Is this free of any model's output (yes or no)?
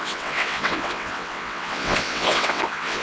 no